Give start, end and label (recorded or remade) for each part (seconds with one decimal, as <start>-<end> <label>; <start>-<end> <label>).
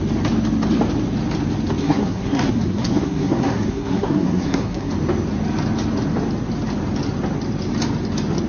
0.0-1.8 recorded; 1.8-4.9 remade; 4.9-8.5 recorded